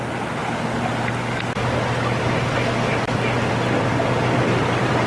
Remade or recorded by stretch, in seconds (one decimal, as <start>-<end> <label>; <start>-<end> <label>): 0.0-5.1 recorded